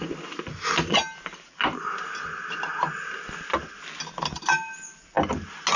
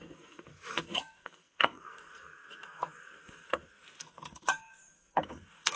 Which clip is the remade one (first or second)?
second